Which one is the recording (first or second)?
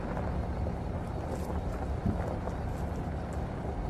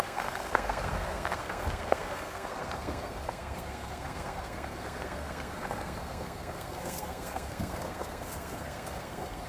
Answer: first